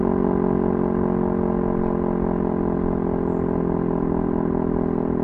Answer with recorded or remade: recorded